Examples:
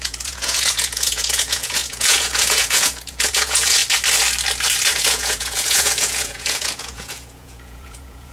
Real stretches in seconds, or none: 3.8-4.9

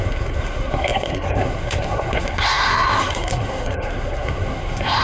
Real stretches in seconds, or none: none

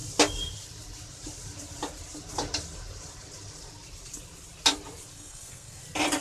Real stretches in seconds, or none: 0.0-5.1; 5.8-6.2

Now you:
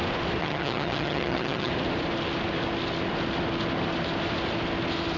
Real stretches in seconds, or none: 0.0-0.4; 1.7-5.2

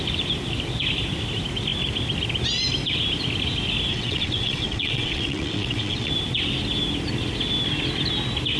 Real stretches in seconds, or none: 0.0-3.9; 6.1-8.6

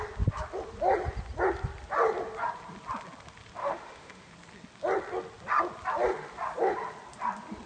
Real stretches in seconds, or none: 0.0-3.6; 4.3-7.7